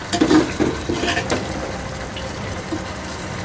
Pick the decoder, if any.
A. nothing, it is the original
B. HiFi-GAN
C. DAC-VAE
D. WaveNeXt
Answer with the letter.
A